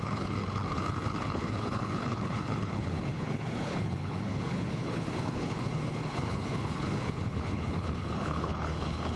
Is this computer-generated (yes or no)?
yes